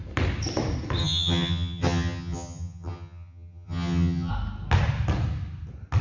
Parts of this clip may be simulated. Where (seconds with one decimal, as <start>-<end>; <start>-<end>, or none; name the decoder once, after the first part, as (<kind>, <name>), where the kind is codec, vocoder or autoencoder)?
1.0-4.3 (vocoder, HiFi-GAN)